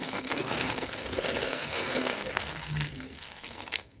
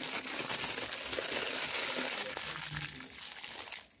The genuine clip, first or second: second